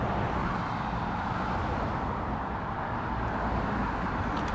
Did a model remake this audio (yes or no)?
no